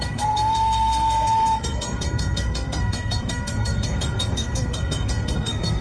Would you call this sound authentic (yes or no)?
no